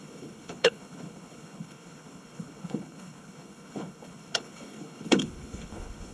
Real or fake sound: fake